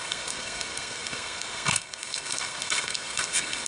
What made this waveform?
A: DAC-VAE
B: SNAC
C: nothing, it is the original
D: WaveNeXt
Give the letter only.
B